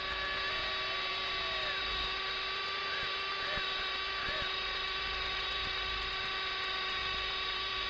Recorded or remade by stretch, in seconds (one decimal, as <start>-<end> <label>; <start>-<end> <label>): 0.0-4.2 recorded; 4.2-6.1 remade; 6.1-7.0 recorded; 7.0-7.9 remade